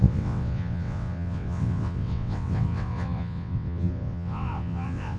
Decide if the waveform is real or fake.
fake